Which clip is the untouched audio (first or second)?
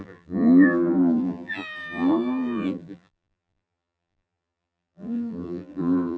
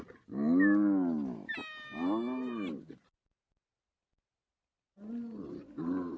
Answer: second